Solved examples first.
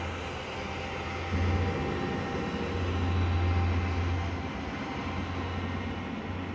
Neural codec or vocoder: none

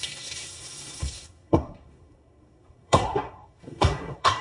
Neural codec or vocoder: codec, SNAC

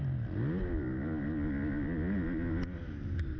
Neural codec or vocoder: none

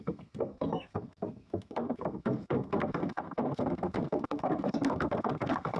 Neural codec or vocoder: codec, SNAC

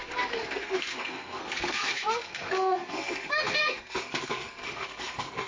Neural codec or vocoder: codec, SNAC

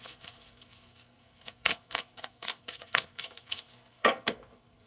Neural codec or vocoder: codec, SNAC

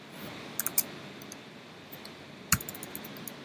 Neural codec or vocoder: none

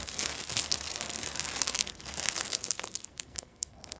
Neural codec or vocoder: codec, SNAC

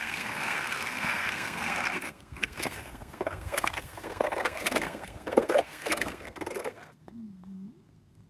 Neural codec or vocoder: codec, SNAC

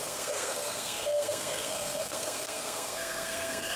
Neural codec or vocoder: codec, SNAC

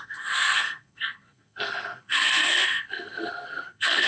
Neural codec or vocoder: codec, SNAC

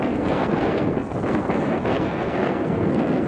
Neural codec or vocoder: codec, SNAC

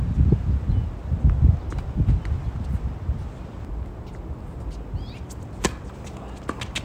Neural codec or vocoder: none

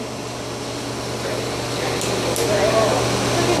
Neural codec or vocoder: none